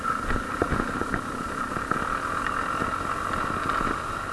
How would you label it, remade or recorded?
recorded